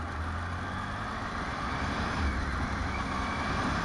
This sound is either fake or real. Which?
real